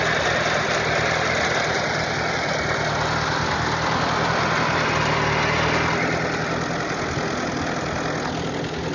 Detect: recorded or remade recorded